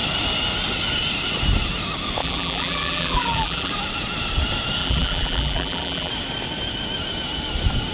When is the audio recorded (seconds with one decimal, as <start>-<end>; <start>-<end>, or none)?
0.0-2.2; 3.7-4.8; 6.1-7.9